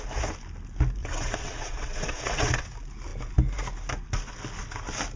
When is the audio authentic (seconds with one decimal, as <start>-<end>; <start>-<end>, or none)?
0.0-1.0; 2.7-5.2

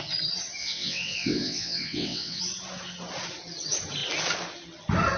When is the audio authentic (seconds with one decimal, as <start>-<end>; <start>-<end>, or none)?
0.0-0.6; 2.4-5.2

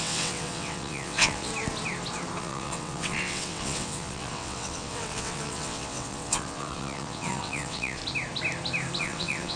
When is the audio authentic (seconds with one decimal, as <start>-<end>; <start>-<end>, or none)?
1.5-2.4; 8.0-9.0

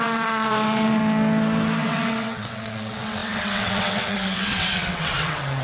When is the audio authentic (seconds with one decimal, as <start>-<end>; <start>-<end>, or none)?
1.0-1.8

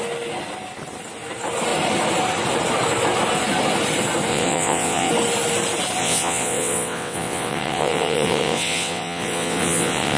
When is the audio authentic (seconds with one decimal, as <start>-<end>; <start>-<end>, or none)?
0.0-4.3; 5.1-6.0

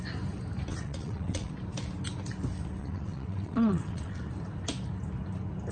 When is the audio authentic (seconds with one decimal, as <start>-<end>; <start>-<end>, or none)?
0.0-0.7; 1.5-2.8; 4.2-5.7

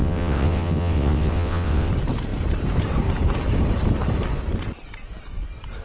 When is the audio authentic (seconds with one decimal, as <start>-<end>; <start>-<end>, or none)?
1.9-5.8